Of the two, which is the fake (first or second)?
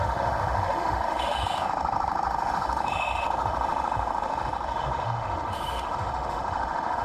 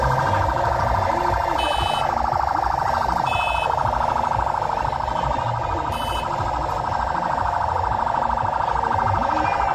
first